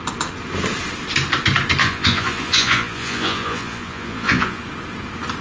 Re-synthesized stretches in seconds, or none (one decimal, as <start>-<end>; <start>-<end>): 1.8-4.6